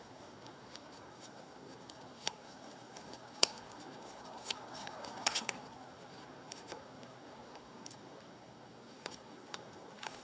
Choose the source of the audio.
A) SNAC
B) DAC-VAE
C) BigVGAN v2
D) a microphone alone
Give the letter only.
A